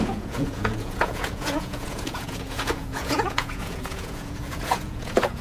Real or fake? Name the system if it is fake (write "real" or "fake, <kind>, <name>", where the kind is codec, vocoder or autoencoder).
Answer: fake, vocoder, Vocos